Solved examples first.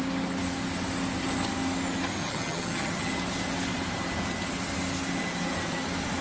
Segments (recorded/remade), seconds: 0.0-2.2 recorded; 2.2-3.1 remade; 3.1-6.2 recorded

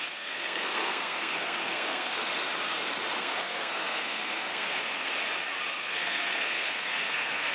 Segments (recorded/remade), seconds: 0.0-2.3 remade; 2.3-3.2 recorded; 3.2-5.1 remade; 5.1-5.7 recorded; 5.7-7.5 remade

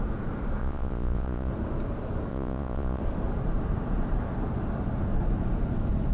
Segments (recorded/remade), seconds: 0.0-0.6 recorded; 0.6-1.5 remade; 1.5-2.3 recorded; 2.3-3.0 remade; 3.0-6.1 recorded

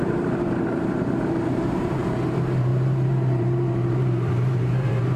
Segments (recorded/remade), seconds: 0.0-5.2 remade

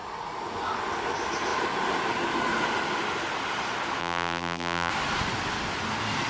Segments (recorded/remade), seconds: 0.0-4.0 recorded; 4.0-4.9 remade; 4.9-6.3 recorded